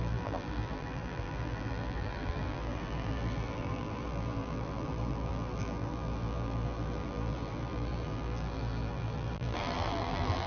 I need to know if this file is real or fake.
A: fake